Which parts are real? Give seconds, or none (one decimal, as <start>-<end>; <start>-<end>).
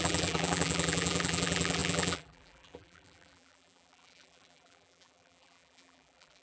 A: none